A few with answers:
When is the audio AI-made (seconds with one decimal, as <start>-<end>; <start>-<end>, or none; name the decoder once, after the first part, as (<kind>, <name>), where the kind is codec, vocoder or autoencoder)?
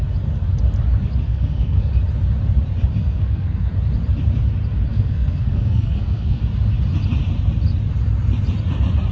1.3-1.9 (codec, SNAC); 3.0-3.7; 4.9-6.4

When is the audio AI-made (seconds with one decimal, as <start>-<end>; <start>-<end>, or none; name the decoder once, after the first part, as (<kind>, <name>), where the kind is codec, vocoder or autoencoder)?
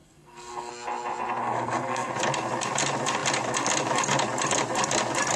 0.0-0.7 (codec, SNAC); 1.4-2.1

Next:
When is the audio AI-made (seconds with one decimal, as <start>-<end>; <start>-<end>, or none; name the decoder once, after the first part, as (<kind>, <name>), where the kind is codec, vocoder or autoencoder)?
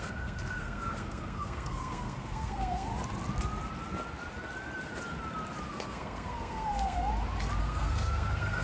0.0-2.9 (codec, SNAC); 5.7-7.1; 7.6-8.6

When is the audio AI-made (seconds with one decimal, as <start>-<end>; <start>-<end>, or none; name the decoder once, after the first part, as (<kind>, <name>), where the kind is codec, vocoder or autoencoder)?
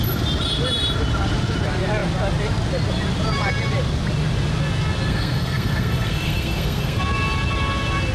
5.1-7.0 (codec, SNAC)